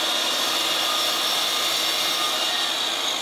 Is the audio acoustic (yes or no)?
yes